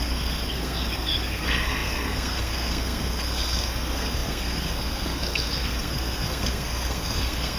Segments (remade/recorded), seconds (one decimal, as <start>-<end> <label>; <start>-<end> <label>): 0.0-7.6 remade